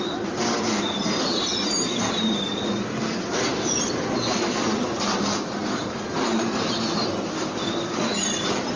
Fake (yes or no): yes